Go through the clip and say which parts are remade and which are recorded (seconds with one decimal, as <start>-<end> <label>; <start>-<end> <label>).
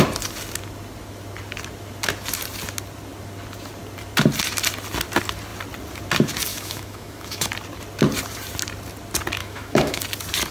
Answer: 0.0-6.5 recorded; 6.5-7.5 remade; 7.5-9.4 recorded; 9.4-10.0 remade; 10.0-10.5 recorded